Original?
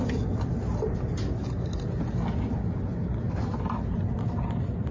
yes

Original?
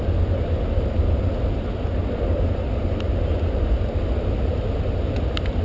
yes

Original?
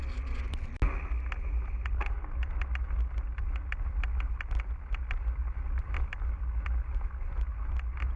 yes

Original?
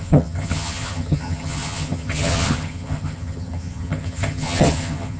no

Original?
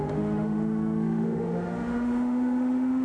no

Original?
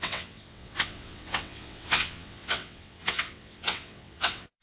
no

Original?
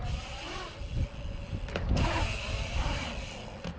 yes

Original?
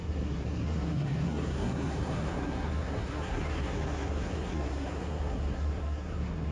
no